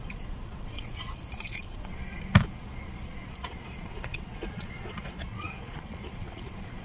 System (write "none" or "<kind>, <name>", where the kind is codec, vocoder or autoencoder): vocoder, Vocos